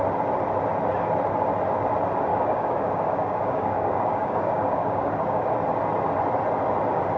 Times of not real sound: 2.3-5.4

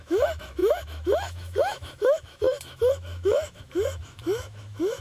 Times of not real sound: 0.0-5.0

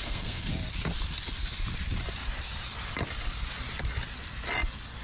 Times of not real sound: 0.0-0.5

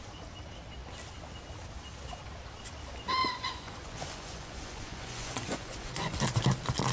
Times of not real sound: 3.2-6.2